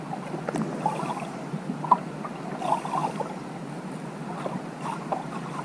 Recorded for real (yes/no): yes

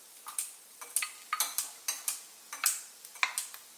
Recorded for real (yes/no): yes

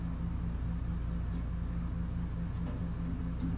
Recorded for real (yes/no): yes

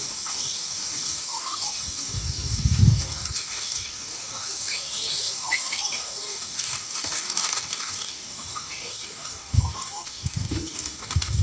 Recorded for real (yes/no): no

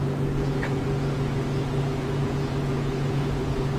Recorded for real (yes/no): no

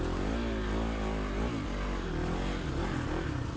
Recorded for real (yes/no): yes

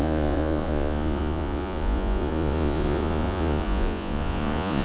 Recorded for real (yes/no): no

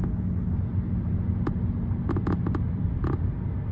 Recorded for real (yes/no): yes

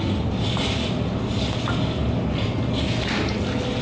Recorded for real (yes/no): yes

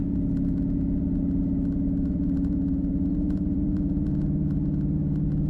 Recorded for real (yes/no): no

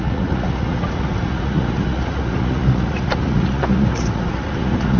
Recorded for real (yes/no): no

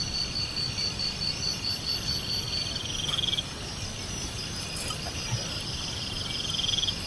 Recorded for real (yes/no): yes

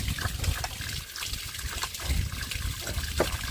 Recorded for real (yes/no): yes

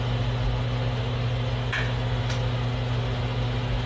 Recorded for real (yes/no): yes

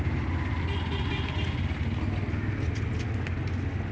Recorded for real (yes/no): yes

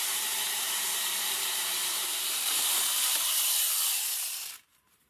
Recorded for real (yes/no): no